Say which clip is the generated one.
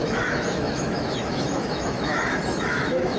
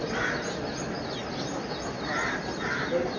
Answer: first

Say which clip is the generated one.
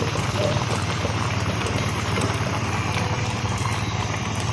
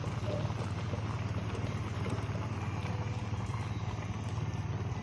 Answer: first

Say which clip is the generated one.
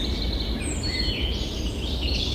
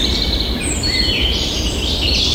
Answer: second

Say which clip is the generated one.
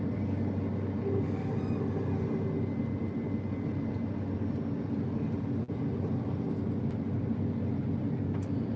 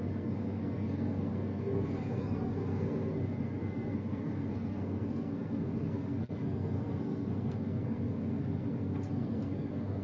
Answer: second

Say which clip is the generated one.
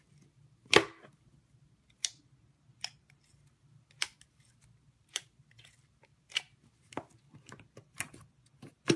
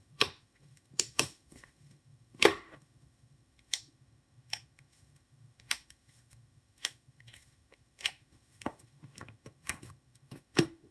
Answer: second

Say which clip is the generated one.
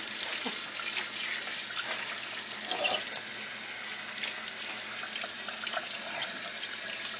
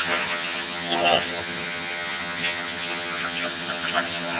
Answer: second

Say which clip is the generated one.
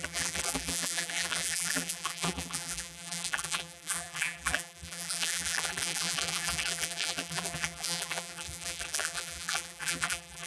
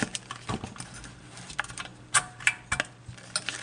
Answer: first